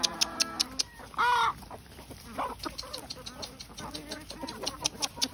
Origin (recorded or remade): recorded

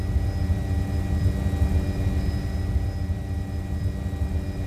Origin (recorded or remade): recorded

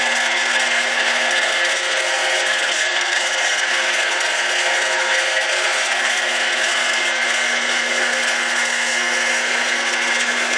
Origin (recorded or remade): remade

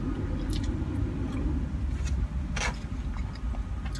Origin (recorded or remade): recorded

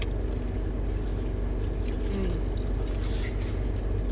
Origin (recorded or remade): recorded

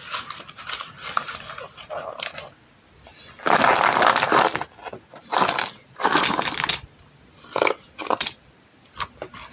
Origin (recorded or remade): recorded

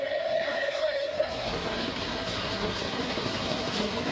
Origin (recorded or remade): remade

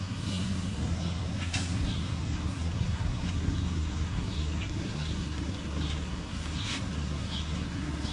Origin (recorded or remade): remade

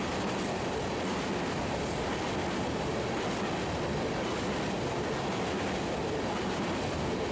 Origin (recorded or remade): recorded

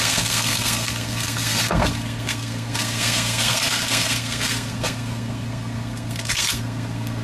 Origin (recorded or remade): remade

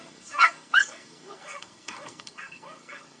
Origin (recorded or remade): remade